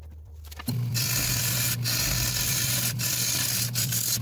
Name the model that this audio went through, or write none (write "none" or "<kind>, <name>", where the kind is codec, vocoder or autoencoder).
vocoder, BigVGAN v2